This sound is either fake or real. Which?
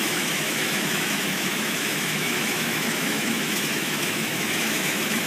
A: fake